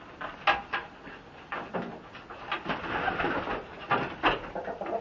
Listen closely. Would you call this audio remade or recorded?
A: recorded